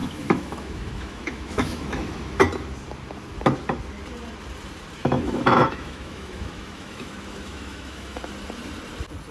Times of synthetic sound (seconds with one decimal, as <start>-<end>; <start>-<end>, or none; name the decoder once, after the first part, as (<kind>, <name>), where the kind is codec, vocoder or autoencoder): 0.0-2.4 (autoencoder, DAC-VAE); 5.0-8.2